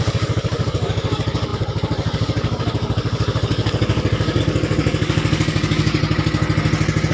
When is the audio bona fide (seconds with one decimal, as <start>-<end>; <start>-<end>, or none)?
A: 6.0-7.1